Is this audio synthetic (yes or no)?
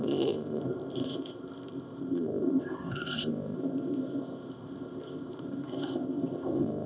yes